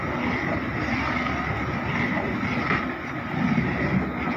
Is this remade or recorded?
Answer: recorded